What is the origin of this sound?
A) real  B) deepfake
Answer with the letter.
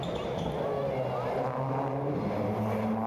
A